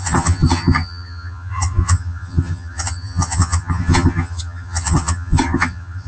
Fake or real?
fake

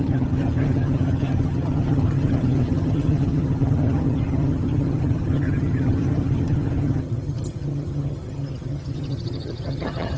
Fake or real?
fake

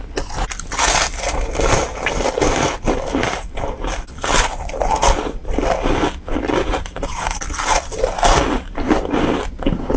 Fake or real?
real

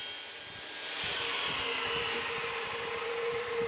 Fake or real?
real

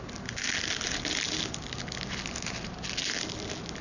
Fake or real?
real